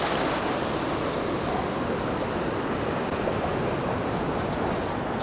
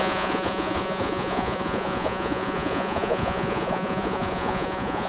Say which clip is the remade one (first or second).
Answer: second